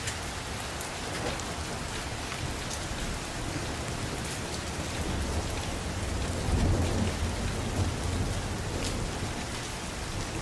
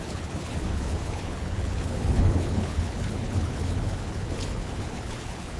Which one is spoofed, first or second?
second